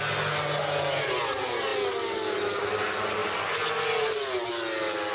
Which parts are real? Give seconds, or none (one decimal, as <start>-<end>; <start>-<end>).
0.0-5.1